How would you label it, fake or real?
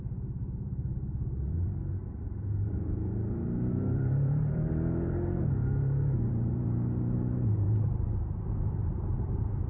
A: fake